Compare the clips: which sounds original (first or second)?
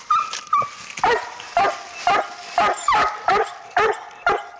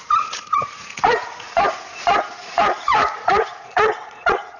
first